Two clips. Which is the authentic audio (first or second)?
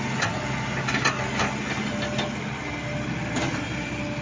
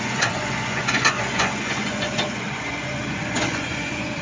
first